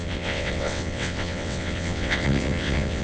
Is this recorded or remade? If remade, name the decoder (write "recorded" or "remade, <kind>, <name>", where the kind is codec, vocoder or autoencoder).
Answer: remade, vocoder, WaveNeXt